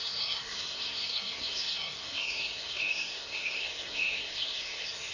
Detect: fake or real fake